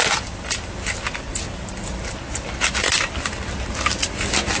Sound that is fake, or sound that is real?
real